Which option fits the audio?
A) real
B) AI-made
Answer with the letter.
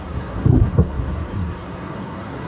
B